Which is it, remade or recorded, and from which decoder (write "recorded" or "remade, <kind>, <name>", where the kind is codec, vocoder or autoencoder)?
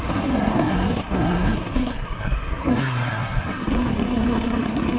remade, codec, SNAC